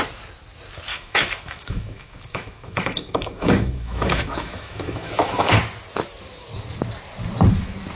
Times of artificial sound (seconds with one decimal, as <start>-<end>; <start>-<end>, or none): 0.9-5.5